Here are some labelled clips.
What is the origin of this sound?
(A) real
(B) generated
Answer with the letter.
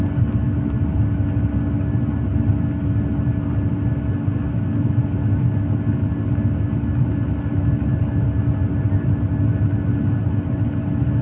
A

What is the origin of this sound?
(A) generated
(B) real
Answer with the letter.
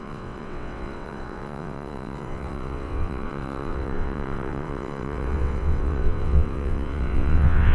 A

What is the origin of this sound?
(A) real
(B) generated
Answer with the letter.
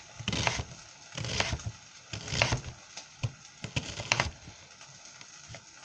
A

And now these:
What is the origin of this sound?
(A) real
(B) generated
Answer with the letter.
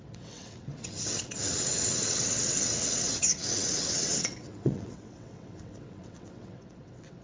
B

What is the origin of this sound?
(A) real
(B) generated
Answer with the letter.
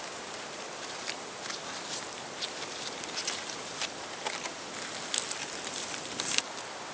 A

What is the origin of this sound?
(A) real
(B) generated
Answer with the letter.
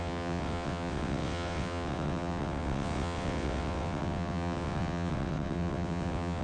B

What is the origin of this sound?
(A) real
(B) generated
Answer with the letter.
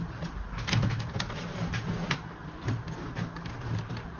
A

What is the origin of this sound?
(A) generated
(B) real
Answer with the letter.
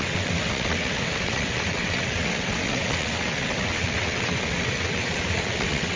A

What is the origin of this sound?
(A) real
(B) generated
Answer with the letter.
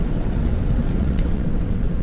B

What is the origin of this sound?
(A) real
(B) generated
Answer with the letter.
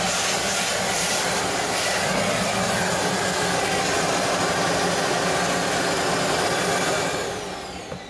A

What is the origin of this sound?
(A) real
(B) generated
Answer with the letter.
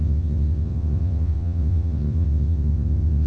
B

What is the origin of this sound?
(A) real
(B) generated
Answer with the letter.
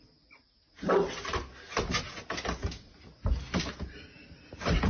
A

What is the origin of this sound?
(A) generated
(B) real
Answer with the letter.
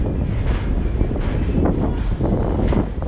B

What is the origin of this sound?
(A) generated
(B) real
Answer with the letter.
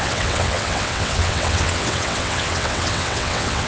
A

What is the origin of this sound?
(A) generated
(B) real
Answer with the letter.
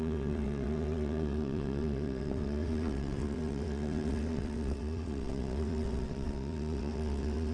A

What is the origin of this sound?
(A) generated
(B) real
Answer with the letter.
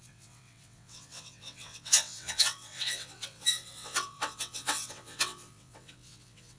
A